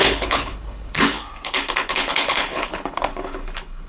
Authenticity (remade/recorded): remade